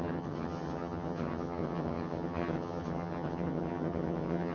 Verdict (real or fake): fake